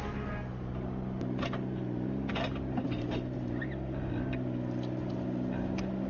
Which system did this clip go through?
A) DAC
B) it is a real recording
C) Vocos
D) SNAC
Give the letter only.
B